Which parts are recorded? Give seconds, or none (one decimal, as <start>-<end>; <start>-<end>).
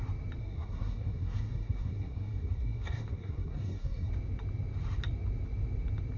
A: 0.0-0.4; 4.1-6.2